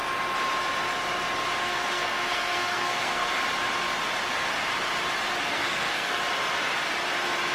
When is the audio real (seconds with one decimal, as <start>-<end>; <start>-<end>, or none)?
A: 0.0-1.6; 3.3-5.5; 6.1-7.5